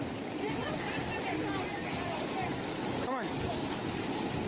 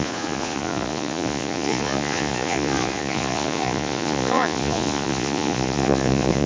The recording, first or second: first